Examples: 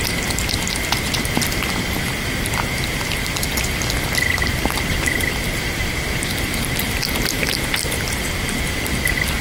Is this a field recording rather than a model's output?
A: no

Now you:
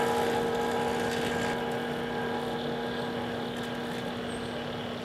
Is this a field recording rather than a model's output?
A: yes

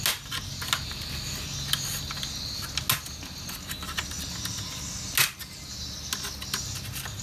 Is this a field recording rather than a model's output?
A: yes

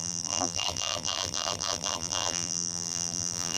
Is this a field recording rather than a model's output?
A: no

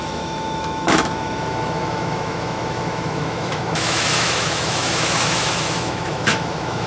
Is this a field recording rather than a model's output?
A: no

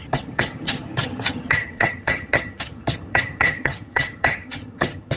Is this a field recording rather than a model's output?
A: no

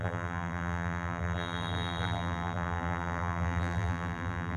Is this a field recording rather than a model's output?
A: no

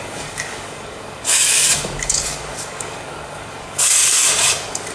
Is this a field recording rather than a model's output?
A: no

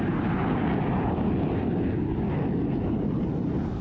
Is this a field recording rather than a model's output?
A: yes